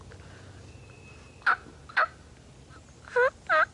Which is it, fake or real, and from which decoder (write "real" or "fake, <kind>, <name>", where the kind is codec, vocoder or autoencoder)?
real